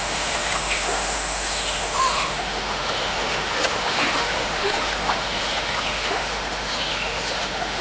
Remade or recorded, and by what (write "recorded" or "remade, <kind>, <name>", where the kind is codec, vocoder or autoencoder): remade, autoencoder, DAC-VAE